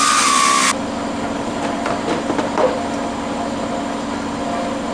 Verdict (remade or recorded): recorded